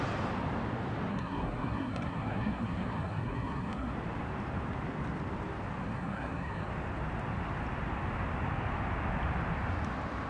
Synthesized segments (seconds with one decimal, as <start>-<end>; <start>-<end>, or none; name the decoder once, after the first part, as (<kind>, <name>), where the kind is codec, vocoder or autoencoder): 1.1-3.9 (codec, SNAC); 5.8-6.7